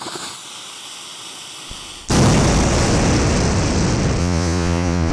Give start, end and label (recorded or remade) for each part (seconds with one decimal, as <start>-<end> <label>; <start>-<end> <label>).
0.0-4.2 recorded; 4.2-5.1 remade